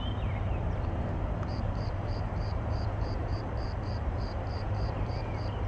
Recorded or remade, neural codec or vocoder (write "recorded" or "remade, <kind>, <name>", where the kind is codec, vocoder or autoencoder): remade, vocoder, BigVGAN v2